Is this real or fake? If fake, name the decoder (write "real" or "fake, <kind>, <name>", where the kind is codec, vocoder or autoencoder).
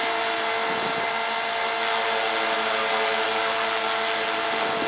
real